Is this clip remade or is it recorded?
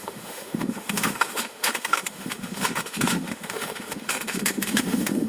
remade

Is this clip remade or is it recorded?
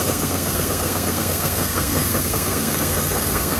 remade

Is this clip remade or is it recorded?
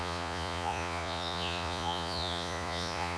remade